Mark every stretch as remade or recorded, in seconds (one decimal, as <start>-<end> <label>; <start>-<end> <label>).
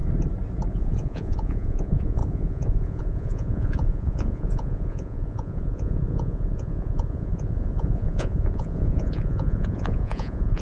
0.0-0.7 recorded; 0.7-10.6 remade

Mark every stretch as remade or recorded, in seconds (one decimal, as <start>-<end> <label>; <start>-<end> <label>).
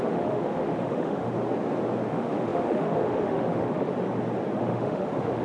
0.0-1.3 remade; 1.3-2.1 recorded; 2.1-3.9 remade; 3.9-4.6 recorded; 4.6-5.4 remade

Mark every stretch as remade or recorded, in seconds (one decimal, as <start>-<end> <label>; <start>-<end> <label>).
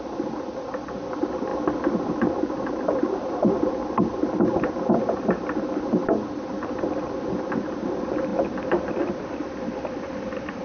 0.0-10.6 recorded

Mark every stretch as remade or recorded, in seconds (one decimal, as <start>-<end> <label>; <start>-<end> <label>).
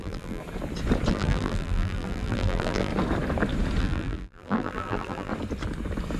0.0-0.4 remade; 0.4-1.1 recorded; 1.1-2.9 remade; 2.9-3.8 recorded; 3.8-5.3 remade; 5.3-6.2 recorded